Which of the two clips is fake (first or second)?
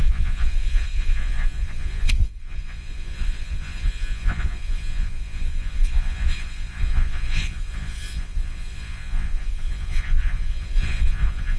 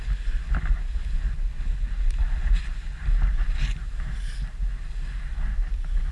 first